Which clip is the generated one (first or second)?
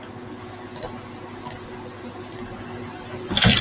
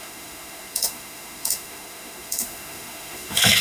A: second